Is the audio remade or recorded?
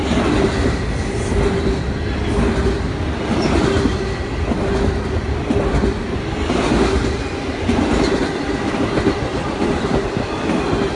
recorded